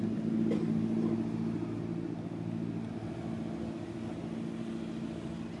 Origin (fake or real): real